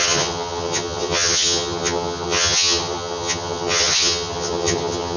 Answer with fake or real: fake